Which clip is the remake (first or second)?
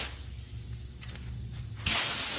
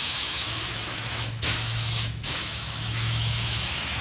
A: second